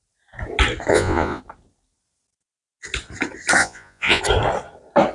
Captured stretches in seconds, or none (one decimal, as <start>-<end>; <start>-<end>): 0.0-0.9; 1.4-3.6; 4.2-5.1